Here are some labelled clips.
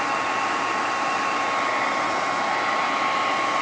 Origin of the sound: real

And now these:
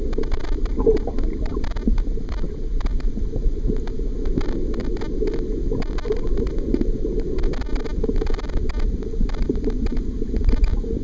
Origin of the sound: real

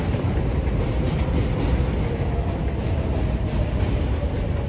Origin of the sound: real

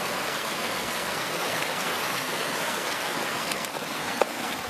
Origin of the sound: fake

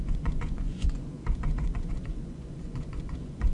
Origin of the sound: fake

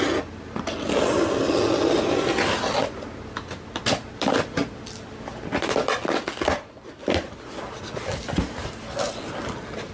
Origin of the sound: real